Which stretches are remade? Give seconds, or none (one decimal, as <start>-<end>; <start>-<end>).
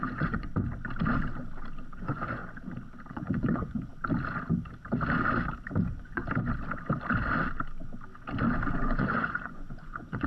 0.0-0.5; 2.0-2.4; 3.1-3.9; 5.8-6.2; 8.8-10.3